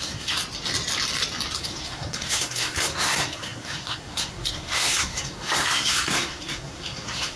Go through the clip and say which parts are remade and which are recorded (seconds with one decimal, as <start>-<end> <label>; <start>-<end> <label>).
0.0-0.4 remade; 0.4-1.6 recorded; 1.6-7.4 remade